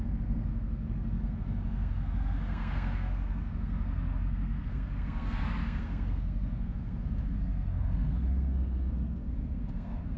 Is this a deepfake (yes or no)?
yes